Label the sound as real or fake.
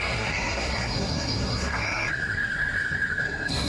fake